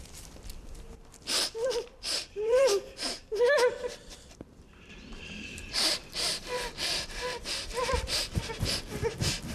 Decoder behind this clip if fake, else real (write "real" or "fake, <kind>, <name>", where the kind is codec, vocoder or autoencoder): fake, vocoder, BigVGAN v2